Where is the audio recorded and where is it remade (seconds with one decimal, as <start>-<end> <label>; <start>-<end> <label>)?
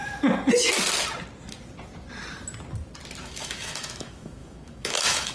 0.0-3.2 recorded; 3.2-5.3 remade